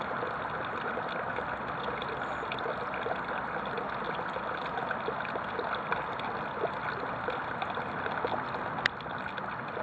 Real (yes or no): yes